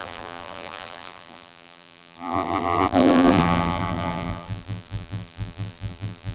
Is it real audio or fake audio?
fake